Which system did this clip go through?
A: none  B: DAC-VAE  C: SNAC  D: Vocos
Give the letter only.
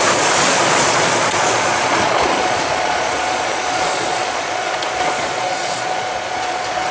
D